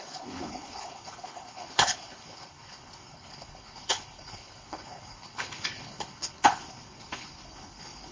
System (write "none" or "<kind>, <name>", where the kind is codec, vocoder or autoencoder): codec, HILCodec